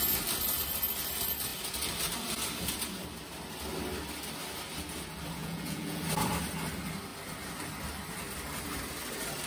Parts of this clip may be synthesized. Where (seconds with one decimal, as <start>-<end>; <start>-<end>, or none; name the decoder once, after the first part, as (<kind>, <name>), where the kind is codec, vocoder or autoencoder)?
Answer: 5.4-6.0 (vocoder, Vocos)